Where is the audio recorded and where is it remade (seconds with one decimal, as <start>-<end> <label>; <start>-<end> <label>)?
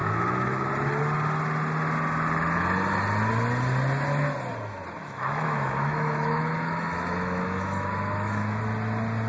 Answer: 0.0-0.7 remade; 0.7-5.0 recorded; 5.0-8.6 remade; 8.6-9.3 recorded